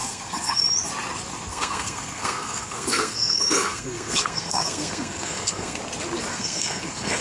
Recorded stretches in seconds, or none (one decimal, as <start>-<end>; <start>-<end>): 0.6-1.5; 5.8-6.3